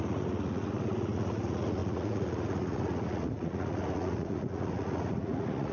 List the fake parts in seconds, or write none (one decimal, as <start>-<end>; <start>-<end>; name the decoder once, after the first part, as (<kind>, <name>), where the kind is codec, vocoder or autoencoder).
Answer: 0.0-5.7 (vocoder, Vocos)